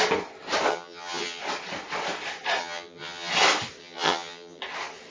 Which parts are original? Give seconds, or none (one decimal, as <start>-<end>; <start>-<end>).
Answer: 0.0-0.7; 1.4-2.6; 3.3-3.8; 4.6-5.1